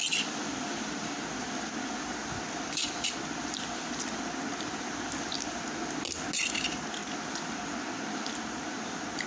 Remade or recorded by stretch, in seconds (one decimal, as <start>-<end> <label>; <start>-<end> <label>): 0.0-9.3 recorded